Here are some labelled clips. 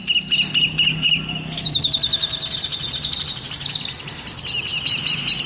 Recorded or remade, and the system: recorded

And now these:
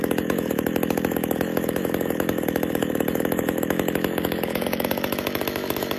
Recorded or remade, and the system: remade, autoencoder, DAC-VAE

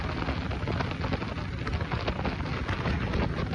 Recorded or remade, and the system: recorded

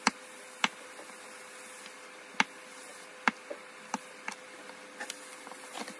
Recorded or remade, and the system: recorded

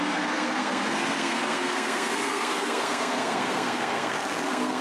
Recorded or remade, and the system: remade, codec, SNAC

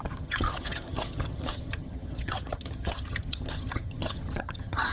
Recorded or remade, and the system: remade, vocoder, HiFi-GAN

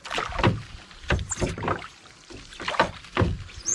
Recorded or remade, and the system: recorded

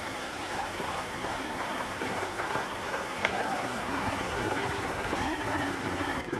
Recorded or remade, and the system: remade, codec, SNAC